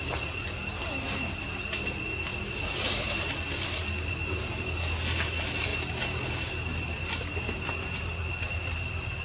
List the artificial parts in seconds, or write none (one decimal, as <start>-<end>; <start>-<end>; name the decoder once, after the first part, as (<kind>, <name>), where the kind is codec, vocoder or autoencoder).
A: none

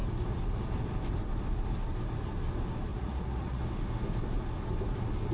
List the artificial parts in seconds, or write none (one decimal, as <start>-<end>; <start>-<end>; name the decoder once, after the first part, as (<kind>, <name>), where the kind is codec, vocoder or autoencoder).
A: 2.9-3.6 (vocoder, Vocos)

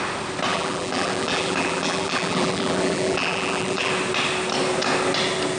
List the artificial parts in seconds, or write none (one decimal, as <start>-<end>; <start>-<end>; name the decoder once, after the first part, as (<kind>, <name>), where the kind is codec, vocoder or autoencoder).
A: 0.5-3.9 (vocoder, BigVGAN v2)